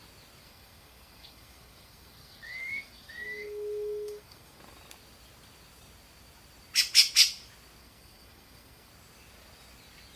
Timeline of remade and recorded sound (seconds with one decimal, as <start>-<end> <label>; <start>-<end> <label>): 0.0-0.4 recorded; 0.4-4.6 remade; 4.6-7.8 recorded; 7.8-8.9 remade; 8.9-10.2 recorded